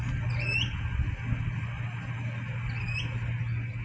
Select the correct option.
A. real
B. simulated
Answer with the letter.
A